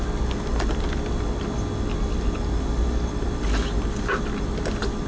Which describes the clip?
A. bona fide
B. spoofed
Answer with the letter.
A